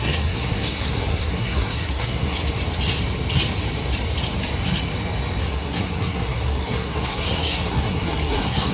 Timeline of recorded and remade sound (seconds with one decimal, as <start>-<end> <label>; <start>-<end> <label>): 0.0-2.4 remade; 2.4-5.4 recorded; 5.4-8.7 remade